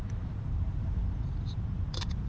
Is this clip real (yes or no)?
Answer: no